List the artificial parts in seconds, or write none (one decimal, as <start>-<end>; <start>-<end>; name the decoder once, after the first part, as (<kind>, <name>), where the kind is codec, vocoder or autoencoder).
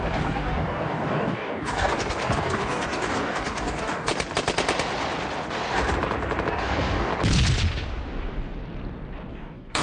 0.0-4.1 (codec, DAC); 6.5-7.1; 9.3-9.8